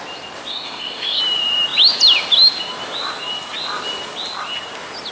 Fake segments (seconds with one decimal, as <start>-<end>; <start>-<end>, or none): 0.5-1.2